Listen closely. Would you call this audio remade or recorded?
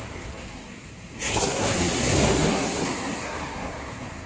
remade